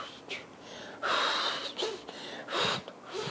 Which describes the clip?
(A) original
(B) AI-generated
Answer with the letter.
A